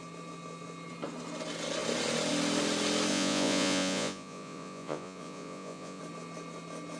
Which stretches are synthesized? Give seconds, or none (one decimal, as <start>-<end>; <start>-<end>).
3.1-6.0